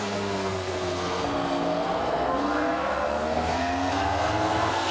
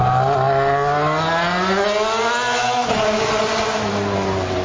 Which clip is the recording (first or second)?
second